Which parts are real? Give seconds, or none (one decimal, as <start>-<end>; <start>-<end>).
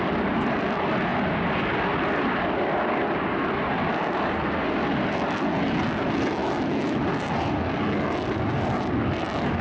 0.0-6.4; 7.0-9.6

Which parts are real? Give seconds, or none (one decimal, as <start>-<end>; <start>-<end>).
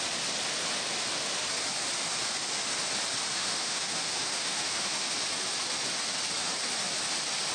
0.0-3.3; 5.1-7.5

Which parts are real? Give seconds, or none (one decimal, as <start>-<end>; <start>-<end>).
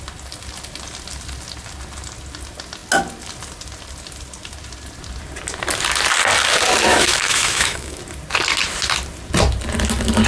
0.0-6.9; 8.0-10.3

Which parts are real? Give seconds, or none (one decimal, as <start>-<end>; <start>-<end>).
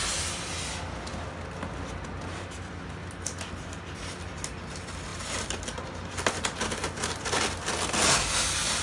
0.0-8.8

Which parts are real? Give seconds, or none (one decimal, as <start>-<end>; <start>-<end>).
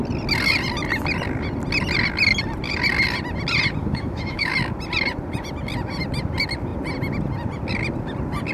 0.0-3.8; 4.5-8.5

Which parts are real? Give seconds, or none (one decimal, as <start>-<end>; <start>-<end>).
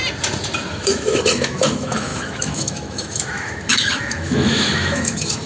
0.0-0.7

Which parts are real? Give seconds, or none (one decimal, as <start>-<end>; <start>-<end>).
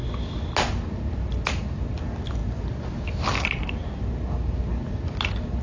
0.0-5.6